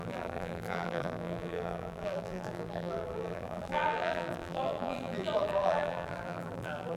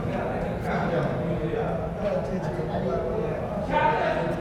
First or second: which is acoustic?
second